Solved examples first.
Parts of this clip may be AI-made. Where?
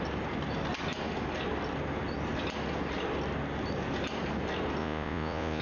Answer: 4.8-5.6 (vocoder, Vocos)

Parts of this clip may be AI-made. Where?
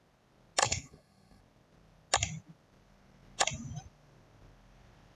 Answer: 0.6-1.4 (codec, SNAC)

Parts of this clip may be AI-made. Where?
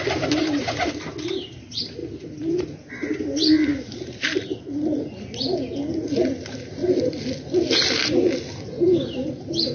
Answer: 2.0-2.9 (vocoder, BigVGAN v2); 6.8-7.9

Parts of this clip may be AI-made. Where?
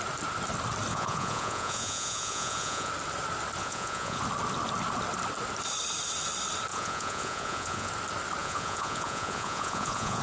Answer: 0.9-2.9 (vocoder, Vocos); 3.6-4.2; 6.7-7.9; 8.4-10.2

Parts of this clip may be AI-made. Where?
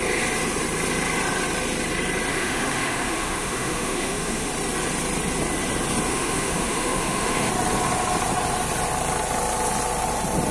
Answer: 2.3-4.5 (autoencoder, DAC-VAE); 6.1-7.5